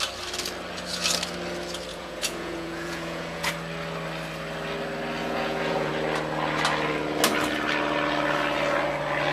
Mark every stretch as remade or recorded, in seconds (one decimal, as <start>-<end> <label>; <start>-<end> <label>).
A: 0.0-1.9 recorded; 1.9-3.5 remade; 3.5-5.2 recorded; 5.2-5.9 remade; 5.9-9.3 recorded